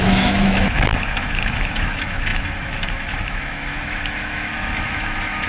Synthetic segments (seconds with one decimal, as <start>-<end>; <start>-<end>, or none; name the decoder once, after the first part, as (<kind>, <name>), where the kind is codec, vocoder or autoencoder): 0.0-5.5 (autoencoder, DAC-VAE)